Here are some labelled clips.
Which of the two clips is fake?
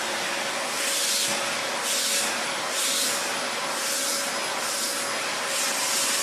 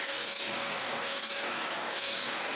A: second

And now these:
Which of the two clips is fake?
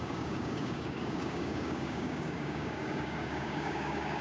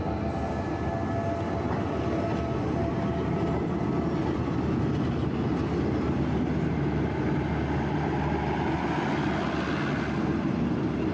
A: first